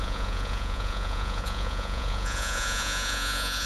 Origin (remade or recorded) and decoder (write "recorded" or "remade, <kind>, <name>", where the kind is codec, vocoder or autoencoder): remade, vocoder, Vocos